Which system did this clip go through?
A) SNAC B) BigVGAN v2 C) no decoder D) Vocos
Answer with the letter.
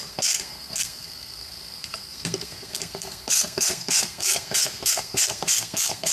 A